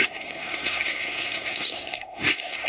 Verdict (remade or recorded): remade